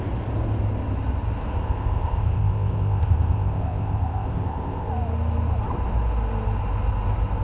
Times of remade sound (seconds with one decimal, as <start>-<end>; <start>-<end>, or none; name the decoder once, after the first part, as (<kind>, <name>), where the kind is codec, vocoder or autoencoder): 1.6-4.9 (codec, ZipCodec)